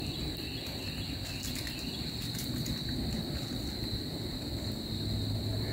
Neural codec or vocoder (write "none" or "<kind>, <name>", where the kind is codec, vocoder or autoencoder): none